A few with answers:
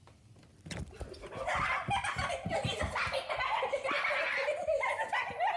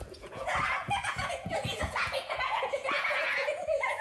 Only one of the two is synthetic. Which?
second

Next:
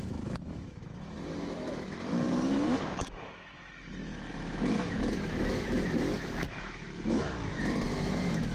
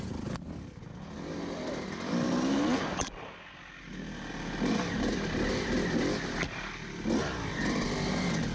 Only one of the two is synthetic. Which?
first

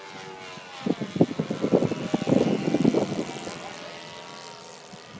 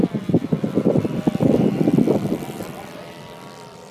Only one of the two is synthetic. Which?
second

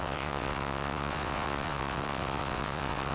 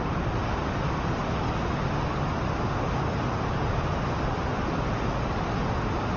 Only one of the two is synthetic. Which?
first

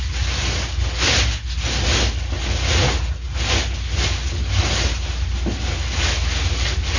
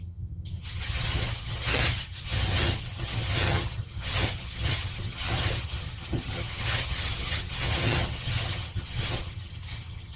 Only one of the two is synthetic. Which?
second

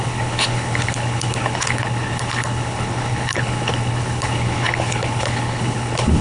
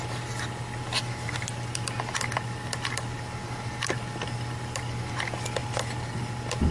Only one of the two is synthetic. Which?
first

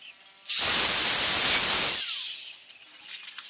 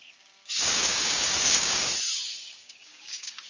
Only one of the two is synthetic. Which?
second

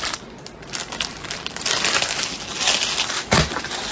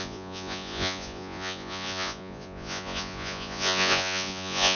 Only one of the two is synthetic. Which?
second